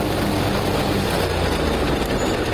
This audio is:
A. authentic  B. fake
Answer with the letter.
A